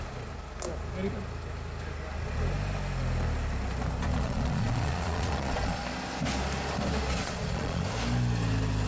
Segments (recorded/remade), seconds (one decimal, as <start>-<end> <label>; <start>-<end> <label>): 0.0-4.1 recorded; 4.1-5.8 remade; 5.8-7.2 recorded; 7.2-7.8 remade; 7.8-8.9 recorded